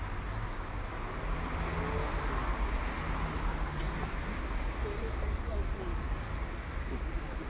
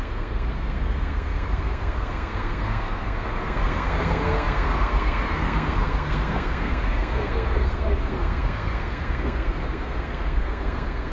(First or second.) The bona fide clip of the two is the first